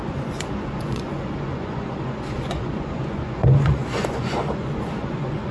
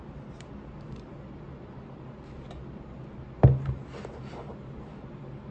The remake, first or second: first